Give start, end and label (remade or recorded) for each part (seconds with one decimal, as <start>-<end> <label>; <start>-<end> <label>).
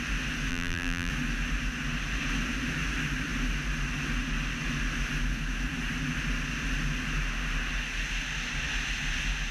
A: 0.0-0.5 recorded; 0.5-1.1 remade; 1.1-9.5 recorded